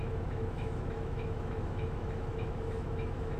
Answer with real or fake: fake